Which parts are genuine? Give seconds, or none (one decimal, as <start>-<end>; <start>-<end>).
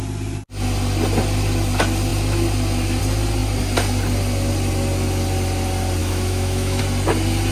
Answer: 0.0-6.0; 6.8-7.5